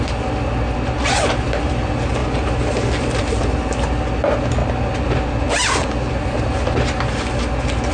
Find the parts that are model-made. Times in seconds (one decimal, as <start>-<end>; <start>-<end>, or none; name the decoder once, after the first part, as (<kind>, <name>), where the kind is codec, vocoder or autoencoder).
none